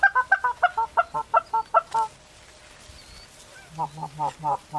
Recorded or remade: recorded